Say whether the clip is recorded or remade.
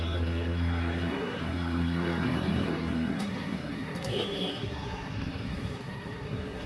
remade